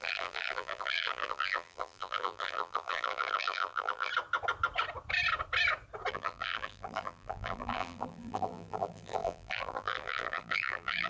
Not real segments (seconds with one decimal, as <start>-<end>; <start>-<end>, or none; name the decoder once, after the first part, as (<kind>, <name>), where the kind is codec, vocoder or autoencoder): 0.0-4.1 (vocoder, BigVGAN v2); 6.1-11.1